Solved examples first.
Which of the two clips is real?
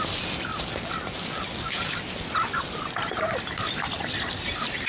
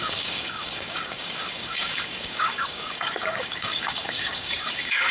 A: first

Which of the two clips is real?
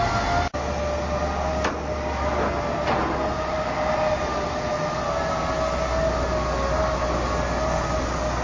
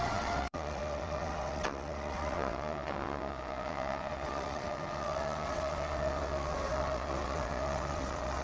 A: first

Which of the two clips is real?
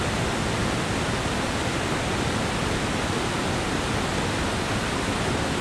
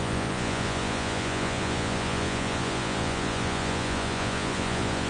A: first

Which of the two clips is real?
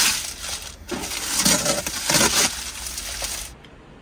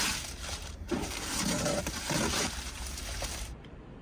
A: first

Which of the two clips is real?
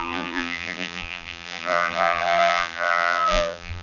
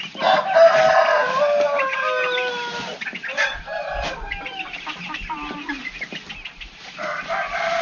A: second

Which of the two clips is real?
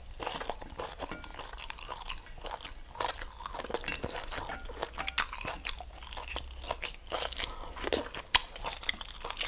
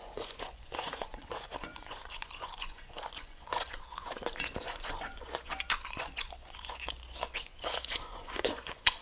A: first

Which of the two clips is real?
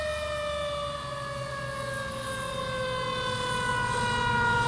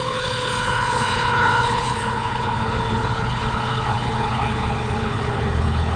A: first